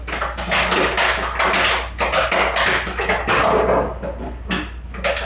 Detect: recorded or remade recorded